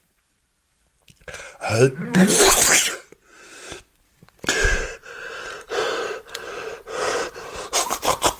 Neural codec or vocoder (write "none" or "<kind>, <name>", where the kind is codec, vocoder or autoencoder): vocoder, BigVGAN v2